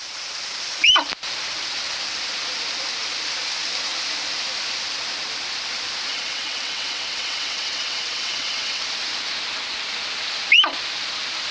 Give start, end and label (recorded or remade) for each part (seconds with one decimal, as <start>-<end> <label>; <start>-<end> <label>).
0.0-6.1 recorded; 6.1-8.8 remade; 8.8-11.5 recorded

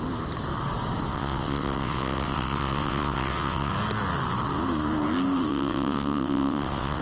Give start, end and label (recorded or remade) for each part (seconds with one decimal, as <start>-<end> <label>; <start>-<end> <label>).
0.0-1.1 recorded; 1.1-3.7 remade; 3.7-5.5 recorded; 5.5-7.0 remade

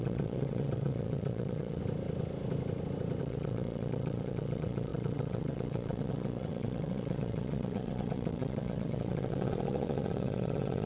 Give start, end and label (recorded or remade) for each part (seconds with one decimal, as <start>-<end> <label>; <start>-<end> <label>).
0.0-1.8 remade; 1.8-3.2 recorded; 3.2-10.9 remade

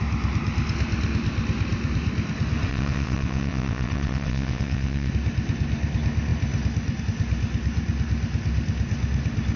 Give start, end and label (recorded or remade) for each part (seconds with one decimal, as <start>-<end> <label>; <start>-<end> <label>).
0.0-2.7 recorded; 2.7-5.1 remade; 5.1-9.6 recorded